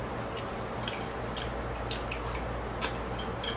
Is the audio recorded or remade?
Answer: recorded